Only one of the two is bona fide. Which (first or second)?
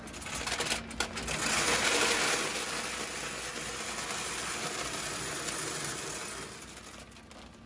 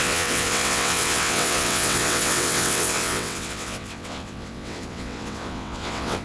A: first